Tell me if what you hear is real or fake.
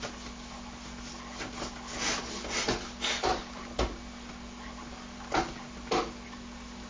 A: real